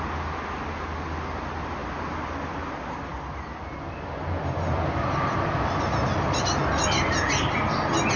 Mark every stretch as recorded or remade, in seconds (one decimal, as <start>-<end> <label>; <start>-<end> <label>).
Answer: 0.0-8.2 recorded